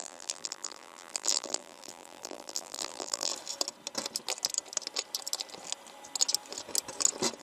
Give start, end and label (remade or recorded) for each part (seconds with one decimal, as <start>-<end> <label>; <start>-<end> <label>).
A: 0.0-3.3 remade; 3.3-7.4 recorded